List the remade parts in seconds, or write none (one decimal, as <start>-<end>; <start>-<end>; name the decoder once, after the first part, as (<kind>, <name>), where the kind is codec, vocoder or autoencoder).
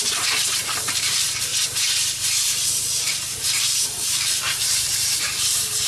0.0-1.5 (vocoder, BigVGAN v2); 3.6-5.9